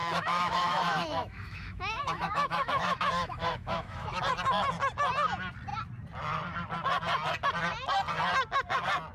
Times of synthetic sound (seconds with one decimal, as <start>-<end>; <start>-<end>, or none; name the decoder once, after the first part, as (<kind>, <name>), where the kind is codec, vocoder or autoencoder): 0.0-4.2 (autoencoder, DAC-VAE)